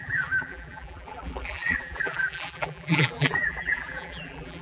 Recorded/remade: remade